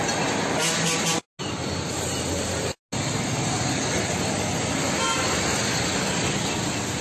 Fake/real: real